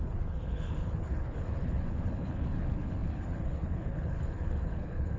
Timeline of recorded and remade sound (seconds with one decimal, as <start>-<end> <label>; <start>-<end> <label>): 0.0-5.2 remade